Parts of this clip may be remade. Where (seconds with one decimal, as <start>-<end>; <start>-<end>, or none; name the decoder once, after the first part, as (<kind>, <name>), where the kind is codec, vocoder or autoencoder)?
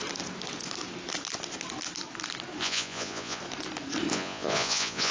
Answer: 2.6-3.4 (vocoder, Vocos); 4.1-5.1